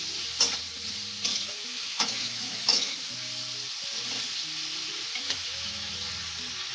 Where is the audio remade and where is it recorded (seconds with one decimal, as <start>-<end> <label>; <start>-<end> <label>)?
0.0-1.3 recorded; 1.3-3.1 remade; 3.1-5.2 recorded; 5.2-5.9 remade; 5.9-6.7 recorded